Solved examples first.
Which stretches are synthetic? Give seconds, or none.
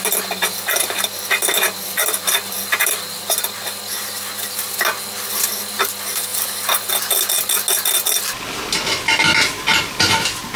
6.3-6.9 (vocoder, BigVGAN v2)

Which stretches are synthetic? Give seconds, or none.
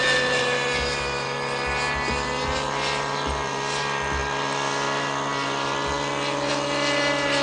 none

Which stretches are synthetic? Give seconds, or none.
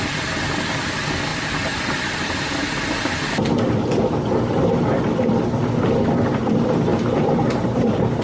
1.3-1.8 (vocoder, BigVGAN v2); 6.9-8.2